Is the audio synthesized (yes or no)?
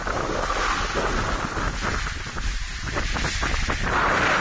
no